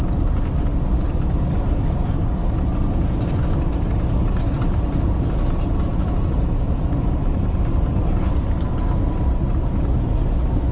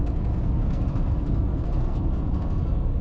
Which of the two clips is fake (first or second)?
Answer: second